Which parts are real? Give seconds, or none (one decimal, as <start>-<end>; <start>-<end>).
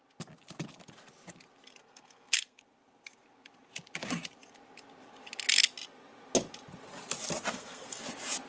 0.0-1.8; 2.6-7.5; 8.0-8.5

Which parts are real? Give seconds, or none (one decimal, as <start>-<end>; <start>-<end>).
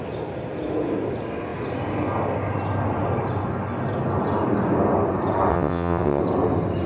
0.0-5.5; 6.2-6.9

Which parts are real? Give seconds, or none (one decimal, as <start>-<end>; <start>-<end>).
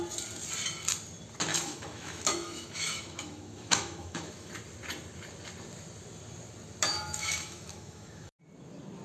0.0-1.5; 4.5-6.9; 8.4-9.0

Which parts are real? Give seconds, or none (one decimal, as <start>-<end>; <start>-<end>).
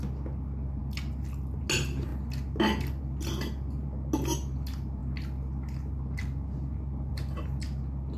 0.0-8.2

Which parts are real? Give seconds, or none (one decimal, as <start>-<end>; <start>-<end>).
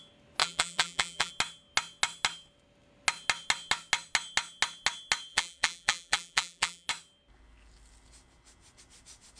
0.0-0.4; 1.3-5.3; 6.9-9.4